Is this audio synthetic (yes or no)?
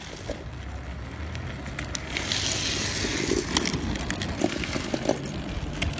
no